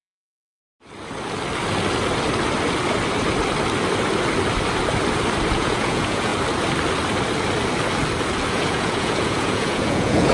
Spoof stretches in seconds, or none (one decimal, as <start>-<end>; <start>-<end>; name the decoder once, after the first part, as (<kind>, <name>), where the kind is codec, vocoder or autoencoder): 0.0-0.6 (vocoder, Vocos); 5.5-6.3; 8.5-10.3